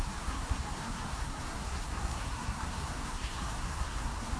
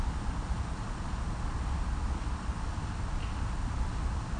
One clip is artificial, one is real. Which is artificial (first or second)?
first